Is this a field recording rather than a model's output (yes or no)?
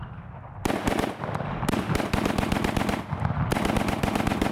yes